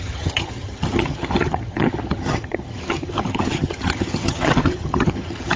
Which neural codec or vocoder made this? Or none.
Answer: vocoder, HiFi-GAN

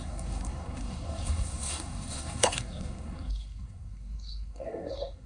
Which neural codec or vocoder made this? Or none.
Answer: codec, SNAC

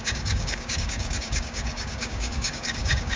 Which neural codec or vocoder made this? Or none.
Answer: codec, DAC